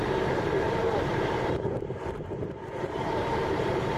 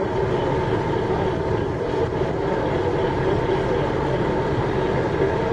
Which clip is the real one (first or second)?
second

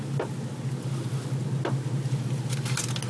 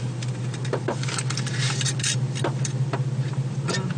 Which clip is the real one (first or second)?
first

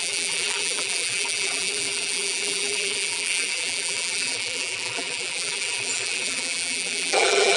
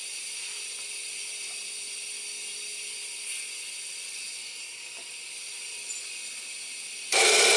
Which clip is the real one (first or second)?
second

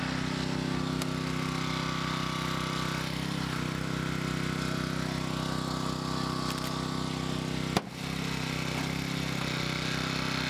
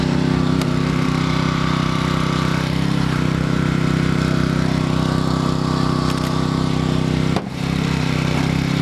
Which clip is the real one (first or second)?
first